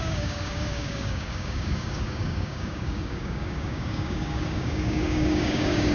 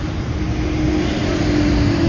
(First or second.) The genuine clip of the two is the second